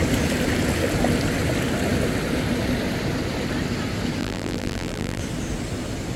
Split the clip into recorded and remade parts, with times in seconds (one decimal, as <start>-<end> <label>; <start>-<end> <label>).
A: 0.0-4.2 recorded; 4.2-5.2 remade; 5.2-6.2 recorded